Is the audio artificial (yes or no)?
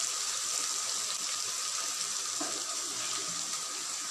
yes